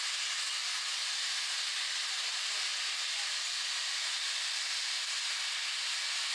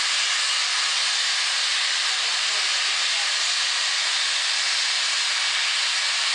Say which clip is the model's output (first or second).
first